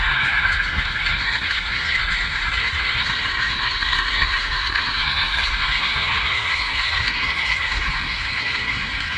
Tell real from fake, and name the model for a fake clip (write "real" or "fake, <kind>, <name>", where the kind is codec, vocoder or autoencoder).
fake, codec, SNAC